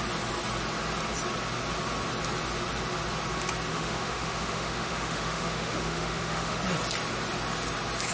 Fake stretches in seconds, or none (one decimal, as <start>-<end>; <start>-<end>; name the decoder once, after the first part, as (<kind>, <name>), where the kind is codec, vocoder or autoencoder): 3.7-6.6 (autoencoder, DAC-VAE)